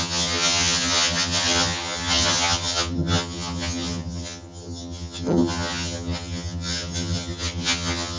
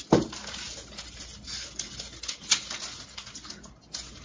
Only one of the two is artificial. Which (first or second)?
first